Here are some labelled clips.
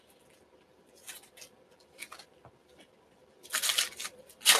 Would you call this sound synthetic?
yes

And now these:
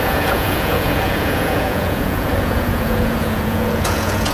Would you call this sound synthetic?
yes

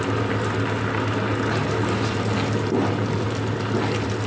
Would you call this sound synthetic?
no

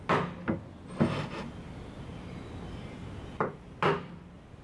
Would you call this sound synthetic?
no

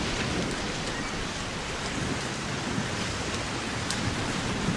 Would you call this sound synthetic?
no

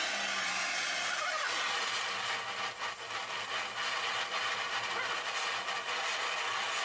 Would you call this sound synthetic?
no